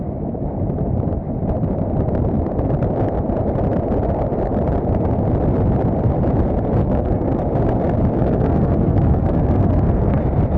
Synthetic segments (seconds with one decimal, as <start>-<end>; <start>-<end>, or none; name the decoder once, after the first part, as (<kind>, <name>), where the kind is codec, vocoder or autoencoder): 6.8-7.4 (codec, SNAC); 8.2-10.2